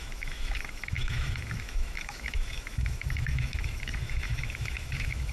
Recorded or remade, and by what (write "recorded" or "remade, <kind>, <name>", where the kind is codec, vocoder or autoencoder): remade, autoencoder, DAC-VAE